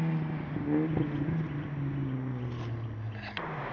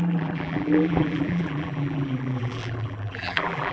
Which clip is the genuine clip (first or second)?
first